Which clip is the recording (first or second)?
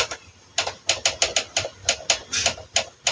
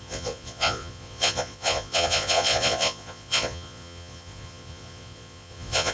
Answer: first